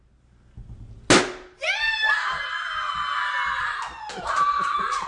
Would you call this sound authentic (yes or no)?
yes